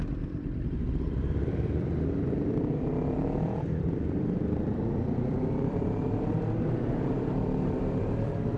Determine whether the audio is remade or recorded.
remade